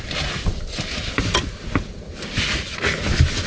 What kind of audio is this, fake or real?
real